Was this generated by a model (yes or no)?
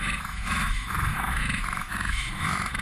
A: yes